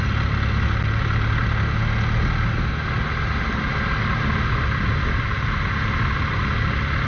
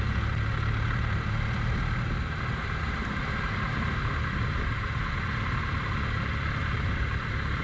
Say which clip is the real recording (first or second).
first